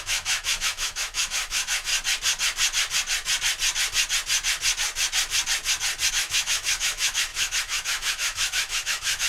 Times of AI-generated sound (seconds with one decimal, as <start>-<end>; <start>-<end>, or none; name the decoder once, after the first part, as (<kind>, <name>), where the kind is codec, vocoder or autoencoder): 0.0-1.9 (autoencoder, DAC-VAE); 6.1-9.3